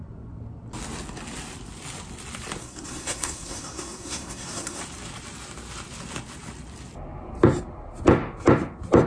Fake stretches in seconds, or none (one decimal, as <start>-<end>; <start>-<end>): 2.6-4.8